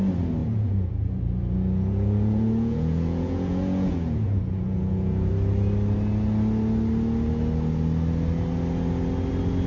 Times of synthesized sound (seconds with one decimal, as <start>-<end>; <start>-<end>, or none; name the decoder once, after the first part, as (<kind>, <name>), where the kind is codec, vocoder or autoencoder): 0.4-5.3 (vocoder, Vocos)